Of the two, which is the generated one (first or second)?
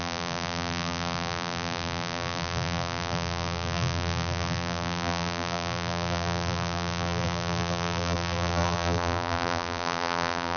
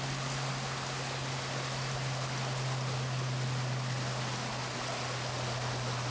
first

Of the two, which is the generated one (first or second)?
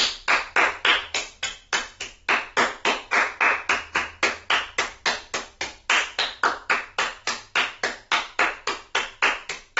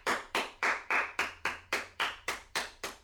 second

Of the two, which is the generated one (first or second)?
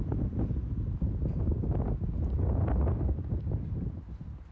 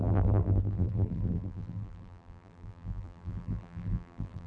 second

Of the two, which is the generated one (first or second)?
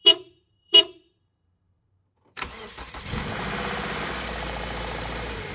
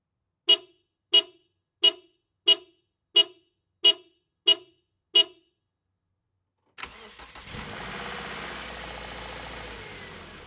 first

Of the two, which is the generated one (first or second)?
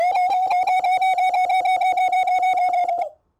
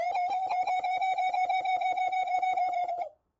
second